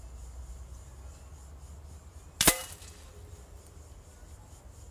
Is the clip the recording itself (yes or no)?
yes